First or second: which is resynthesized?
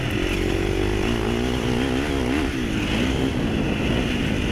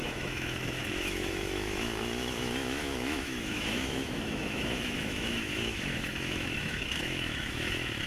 second